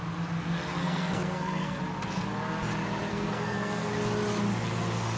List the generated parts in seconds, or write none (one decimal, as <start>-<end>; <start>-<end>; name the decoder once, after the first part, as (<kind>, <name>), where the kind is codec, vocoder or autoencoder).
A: 0.8-1.8 (codec, SNAC); 3.1-3.9